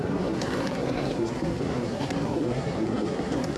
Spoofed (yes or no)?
yes